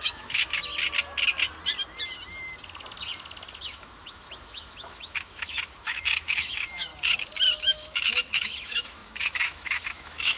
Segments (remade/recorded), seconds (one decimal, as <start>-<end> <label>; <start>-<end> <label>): 0.0-0.7 remade; 0.7-3.6 recorded; 3.6-6.9 remade; 6.9-7.6 recorded; 7.6-10.4 remade